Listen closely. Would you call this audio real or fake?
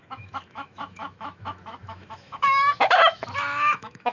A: fake